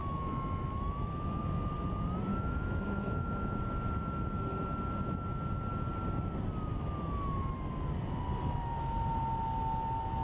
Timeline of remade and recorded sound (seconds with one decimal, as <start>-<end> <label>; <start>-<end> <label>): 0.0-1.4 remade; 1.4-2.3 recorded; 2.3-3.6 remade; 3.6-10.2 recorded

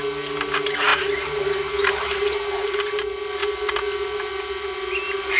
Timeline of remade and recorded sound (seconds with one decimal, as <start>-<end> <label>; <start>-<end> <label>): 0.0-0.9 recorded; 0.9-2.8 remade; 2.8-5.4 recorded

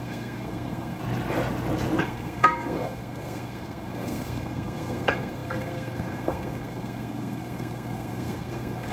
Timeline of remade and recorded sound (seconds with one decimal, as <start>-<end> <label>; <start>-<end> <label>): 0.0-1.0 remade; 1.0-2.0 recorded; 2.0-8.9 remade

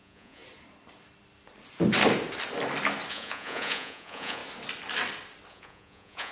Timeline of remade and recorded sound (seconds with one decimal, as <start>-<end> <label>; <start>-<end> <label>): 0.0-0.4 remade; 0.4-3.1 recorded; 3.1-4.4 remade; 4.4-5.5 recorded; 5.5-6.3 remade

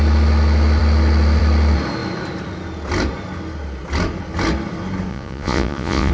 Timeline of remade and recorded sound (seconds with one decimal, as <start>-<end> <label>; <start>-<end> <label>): 0.0-5.1 recorded; 5.1-6.1 remade

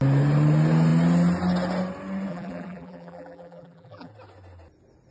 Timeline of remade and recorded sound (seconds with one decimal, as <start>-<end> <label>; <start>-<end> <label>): 0.0-2.3 recorded; 2.3-4.1 remade; 4.1-5.1 recorded

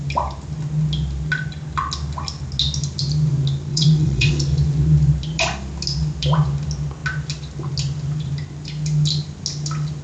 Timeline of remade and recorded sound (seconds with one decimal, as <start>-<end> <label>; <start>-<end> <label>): 0.0-3.7 recorded; 3.7-4.3 remade; 4.3-10.0 recorded

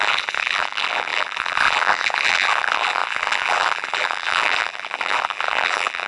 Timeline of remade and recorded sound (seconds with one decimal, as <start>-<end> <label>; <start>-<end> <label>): 0.0-6.1 remade